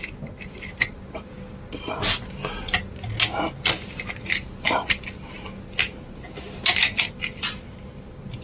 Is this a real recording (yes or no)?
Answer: yes